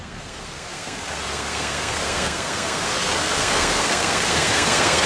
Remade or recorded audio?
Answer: remade